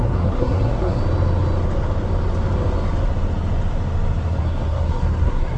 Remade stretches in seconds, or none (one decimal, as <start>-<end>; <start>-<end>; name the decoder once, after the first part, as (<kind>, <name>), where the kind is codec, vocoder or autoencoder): 0.0-1.0 (codec, SNAC); 4.4-5.6